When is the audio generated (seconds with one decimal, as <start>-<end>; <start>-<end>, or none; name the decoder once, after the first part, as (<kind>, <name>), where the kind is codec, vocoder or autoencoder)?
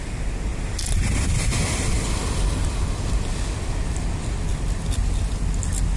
none